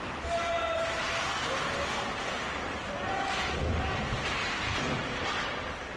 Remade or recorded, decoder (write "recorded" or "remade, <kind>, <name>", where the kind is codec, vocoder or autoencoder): recorded